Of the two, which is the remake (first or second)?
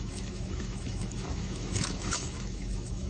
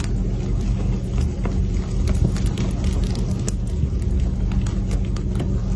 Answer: first